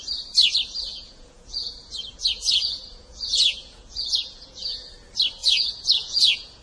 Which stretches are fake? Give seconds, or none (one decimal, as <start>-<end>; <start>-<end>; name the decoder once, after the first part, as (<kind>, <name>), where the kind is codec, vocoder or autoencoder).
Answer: 0.9-4.9 (vocoder, Vocos); 5.4-6.6

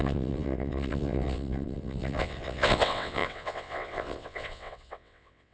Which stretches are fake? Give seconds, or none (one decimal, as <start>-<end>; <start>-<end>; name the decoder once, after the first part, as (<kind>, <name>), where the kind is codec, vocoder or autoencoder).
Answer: 0.0-5.5 (vocoder, WaveNeXt)

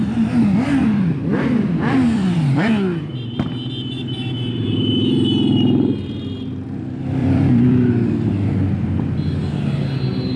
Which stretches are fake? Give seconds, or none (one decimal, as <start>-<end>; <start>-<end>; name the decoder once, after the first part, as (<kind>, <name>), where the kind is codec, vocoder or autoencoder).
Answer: 0.8-3.2 (vocoder, BigVGAN v2); 7.2-7.9